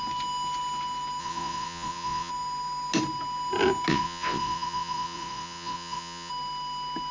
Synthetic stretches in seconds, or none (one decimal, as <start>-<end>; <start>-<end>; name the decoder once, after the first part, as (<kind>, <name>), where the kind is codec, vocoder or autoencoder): 1.2-2.3 (vocoder, Vocos); 3.9-6.3